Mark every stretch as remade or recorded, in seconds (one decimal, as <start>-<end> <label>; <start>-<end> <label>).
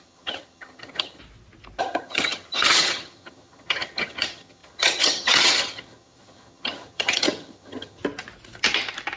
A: 0.0-1.2 remade; 1.2-1.8 recorded; 1.8-8.0 remade; 8.0-9.2 recorded